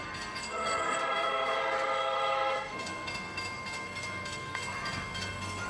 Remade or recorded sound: remade